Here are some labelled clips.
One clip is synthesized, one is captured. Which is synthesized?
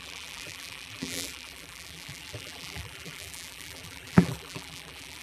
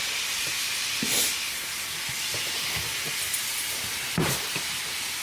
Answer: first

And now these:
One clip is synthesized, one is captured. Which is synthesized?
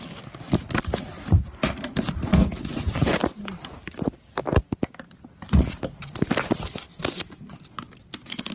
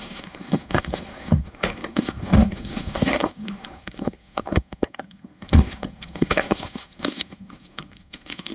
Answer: second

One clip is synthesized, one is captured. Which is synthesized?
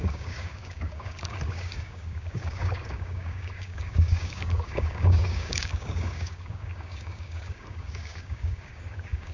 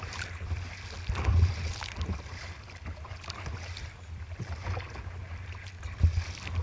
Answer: first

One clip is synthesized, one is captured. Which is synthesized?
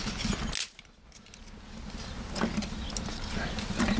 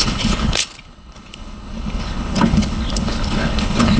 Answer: second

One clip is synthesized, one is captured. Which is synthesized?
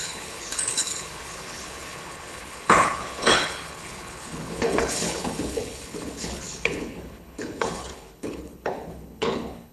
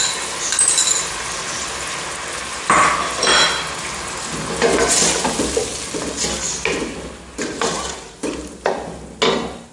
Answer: first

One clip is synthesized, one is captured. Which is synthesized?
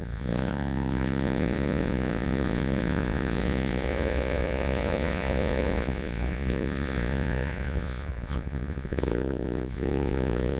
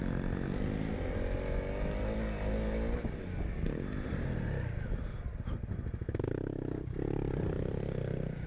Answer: first